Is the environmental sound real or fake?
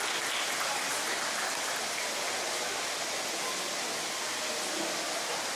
real